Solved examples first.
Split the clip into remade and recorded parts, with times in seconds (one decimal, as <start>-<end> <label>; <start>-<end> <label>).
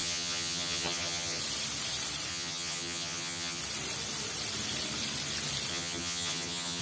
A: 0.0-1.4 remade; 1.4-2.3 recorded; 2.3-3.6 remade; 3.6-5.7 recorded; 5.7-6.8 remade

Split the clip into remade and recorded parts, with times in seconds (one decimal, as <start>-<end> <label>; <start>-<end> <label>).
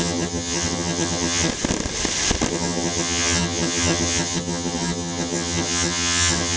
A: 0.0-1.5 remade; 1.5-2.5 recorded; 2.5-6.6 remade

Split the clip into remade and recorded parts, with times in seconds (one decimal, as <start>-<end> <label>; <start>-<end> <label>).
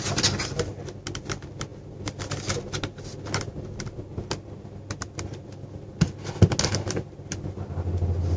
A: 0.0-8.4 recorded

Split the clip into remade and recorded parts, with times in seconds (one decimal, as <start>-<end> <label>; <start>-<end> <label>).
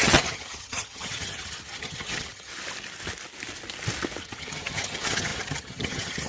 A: 0.0-2.5 remade; 2.5-4.2 recorded; 4.2-6.3 remade